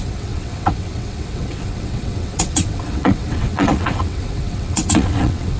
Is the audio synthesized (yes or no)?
yes